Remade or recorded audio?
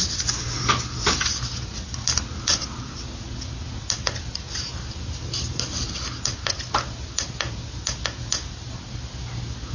recorded